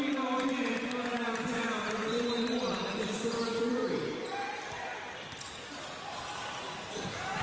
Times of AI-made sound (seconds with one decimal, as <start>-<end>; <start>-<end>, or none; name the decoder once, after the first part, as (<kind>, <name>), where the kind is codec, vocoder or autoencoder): 2.0-3.4 (vocoder, BigVGAN v2); 3.8-4.3